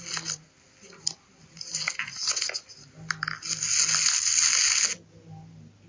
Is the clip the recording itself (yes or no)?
yes